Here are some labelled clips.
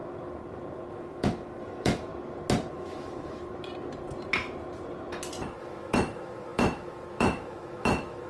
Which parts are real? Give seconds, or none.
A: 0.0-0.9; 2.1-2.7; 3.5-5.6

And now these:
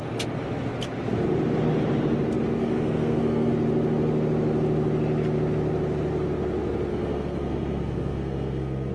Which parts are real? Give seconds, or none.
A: 0.0-2.6; 3.5-6.9